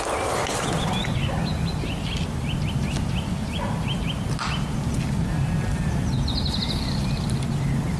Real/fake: real